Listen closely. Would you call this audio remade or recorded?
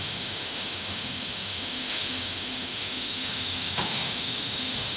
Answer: remade